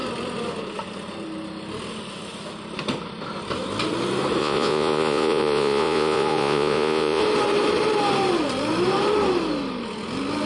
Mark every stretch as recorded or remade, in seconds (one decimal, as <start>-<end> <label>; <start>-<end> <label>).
0.0-4.4 recorded; 4.4-7.2 remade; 7.2-10.5 recorded